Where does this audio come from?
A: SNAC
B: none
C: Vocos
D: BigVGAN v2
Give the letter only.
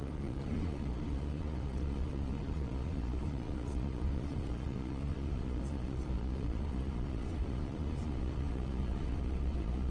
C